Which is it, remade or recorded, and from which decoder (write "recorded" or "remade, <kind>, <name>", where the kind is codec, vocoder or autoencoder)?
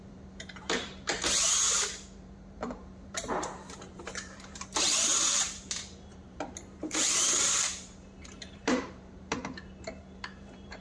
remade, vocoder, BigVGAN v2